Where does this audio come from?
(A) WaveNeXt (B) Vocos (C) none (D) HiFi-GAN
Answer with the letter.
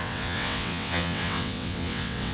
A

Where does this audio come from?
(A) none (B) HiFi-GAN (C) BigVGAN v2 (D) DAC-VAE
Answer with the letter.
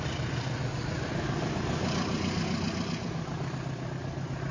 A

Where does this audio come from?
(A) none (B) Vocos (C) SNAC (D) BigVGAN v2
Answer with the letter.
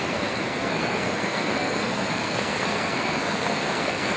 C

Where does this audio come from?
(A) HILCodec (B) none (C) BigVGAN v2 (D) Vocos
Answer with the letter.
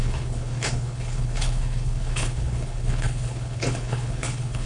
A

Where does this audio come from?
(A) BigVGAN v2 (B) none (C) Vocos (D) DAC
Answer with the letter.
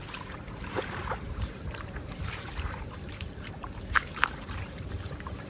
A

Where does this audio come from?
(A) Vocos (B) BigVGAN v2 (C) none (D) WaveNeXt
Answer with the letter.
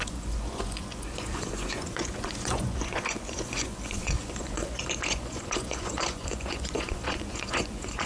A